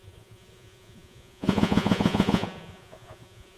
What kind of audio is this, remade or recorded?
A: remade